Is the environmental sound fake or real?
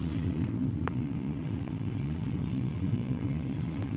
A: fake